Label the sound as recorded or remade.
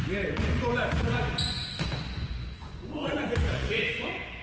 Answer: remade